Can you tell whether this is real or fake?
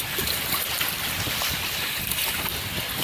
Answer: real